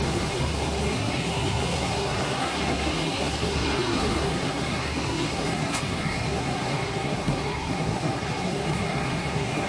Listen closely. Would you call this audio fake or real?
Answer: fake